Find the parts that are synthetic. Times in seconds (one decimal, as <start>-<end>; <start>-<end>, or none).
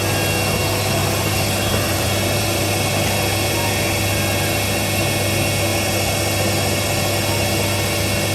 1.0-2.7